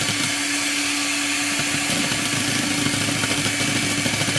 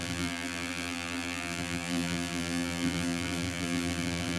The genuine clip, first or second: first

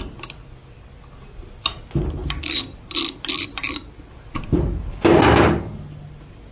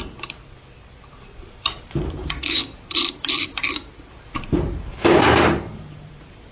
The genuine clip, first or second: first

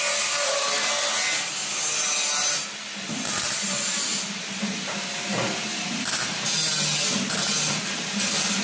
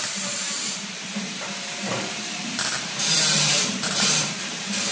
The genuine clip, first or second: first